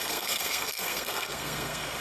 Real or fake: fake